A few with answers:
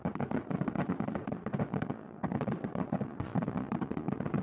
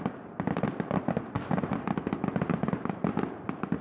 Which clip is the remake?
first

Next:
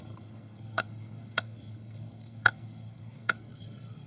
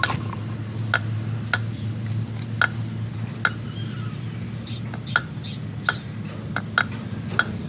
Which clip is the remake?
first